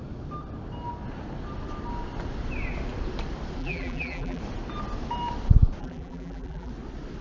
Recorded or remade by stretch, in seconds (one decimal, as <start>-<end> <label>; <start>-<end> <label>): 0.0-3.6 recorded; 3.6-4.4 remade; 4.4-5.8 recorded; 5.8-6.7 remade; 6.7-7.2 recorded